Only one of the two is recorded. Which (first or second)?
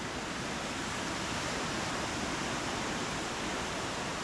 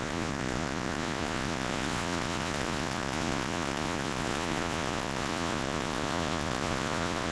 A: first